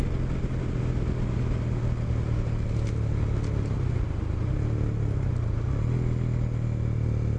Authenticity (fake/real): real